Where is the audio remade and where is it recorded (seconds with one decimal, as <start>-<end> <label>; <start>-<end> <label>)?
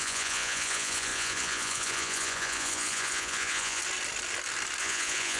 0.0-3.8 remade; 3.8-4.8 recorded; 4.8-5.4 remade